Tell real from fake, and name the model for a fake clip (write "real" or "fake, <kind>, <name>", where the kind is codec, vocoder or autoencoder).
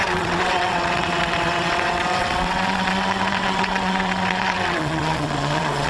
fake, vocoder, WaveNeXt